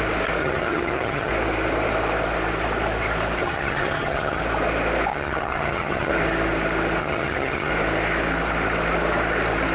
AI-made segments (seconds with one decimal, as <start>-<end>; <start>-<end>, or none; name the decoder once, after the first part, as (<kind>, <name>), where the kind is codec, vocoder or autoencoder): 0.4-1.3 (vocoder, HiFi-GAN); 3.4-4.4; 5.1-6.1; 7.0-7.7